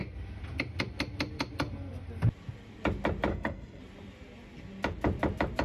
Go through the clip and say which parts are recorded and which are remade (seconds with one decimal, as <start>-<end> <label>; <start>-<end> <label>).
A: 0.0-3.3 recorded; 3.3-3.8 remade; 3.8-5.6 recorded